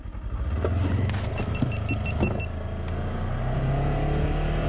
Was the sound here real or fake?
real